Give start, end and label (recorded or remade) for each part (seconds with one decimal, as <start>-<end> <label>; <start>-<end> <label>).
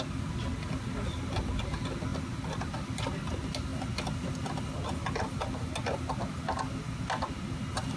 0.0-8.0 recorded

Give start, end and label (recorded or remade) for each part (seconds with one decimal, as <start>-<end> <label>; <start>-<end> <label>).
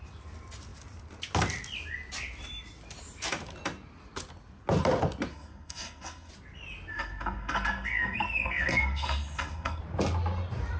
0.0-5.3 recorded; 5.3-6.3 remade; 6.3-6.9 recorded; 6.9-9.8 remade; 9.8-10.8 recorded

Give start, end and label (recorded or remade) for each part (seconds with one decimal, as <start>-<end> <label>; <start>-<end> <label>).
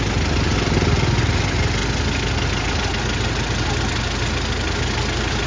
0.0-5.5 recorded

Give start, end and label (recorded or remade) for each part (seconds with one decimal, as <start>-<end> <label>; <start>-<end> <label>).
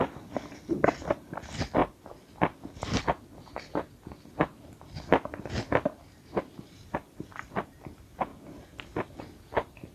0.0-1.8 remade; 1.8-6.5 recorded; 6.5-8.3 remade; 8.3-9.2 recorded; 9.2-9.9 remade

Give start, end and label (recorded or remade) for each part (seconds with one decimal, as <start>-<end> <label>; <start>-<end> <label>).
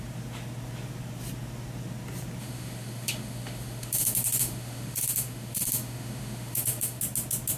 0.0-2.4 recorded; 2.4-7.0 remade; 7.0-7.6 recorded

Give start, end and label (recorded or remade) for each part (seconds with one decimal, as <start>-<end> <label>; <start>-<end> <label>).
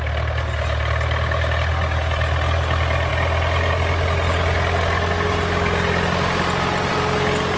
0.0-7.6 recorded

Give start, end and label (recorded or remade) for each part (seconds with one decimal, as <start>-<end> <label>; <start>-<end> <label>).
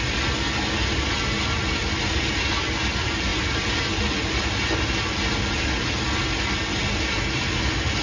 0.0-8.0 recorded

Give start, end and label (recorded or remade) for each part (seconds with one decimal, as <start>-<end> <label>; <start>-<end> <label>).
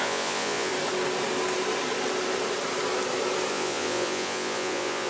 0.0-0.7 remade; 0.7-3.5 recorded; 3.5-5.1 remade